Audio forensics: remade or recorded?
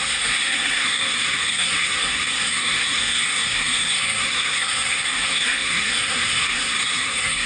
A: remade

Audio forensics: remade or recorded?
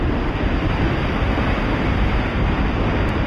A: recorded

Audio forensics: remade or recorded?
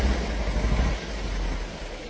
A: recorded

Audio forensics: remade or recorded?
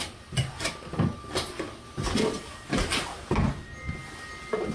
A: recorded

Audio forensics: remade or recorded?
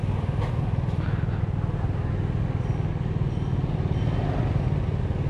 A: recorded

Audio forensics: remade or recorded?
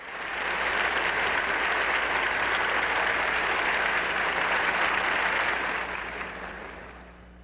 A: recorded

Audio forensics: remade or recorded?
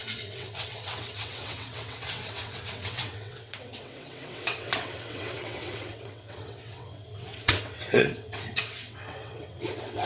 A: remade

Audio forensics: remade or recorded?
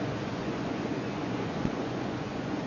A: remade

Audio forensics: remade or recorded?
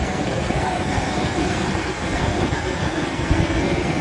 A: remade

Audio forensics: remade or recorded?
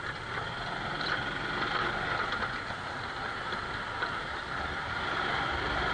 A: recorded